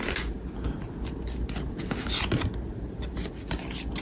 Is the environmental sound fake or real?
real